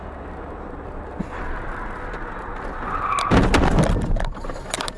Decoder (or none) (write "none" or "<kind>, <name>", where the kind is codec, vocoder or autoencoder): none